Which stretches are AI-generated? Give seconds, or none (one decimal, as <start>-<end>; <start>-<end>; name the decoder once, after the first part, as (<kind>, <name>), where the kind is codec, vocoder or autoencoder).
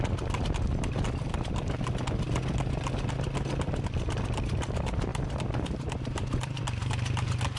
5.1-6.6 (vocoder, BigVGAN v2)